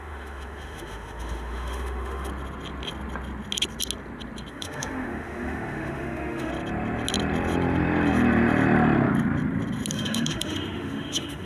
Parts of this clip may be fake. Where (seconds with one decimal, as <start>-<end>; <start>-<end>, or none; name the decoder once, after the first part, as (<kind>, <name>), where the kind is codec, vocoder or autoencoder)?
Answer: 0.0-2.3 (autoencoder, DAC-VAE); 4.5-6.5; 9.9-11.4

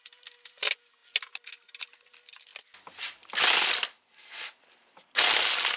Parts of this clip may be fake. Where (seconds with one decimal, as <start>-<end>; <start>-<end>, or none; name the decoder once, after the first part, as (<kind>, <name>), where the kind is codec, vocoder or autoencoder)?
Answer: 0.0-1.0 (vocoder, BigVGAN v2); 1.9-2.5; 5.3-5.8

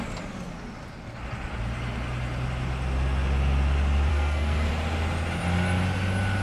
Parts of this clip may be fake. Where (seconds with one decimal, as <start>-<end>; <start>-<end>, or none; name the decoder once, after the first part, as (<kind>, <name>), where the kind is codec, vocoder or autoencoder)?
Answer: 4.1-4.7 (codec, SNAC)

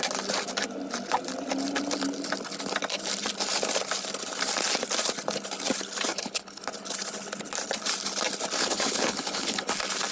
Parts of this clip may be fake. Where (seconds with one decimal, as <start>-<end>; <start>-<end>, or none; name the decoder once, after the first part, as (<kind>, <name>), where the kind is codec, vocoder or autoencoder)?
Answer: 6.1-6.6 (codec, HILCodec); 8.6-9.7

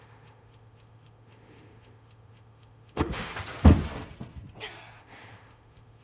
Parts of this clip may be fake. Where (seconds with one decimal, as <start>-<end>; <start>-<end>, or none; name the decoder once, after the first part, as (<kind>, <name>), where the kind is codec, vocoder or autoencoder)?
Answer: 0.0-3.3 (autoencoder, DAC-VAE); 5.0-6.0

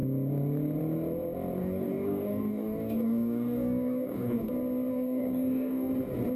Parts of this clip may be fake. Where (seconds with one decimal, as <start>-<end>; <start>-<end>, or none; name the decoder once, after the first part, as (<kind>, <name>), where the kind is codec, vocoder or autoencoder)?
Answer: 1.6-4.5 (codec, DAC); 4.9-5.9